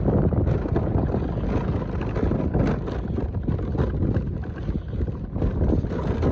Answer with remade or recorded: recorded